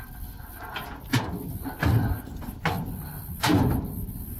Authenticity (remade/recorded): recorded